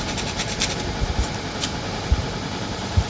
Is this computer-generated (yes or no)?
yes